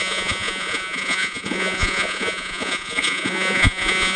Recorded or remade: remade